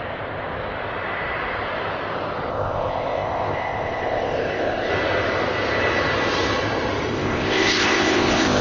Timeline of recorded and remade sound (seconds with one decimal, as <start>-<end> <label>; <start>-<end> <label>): 0.0-2.5 recorded; 2.5-4.9 remade; 4.9-7.1 recorded; 7.1-8.6 remade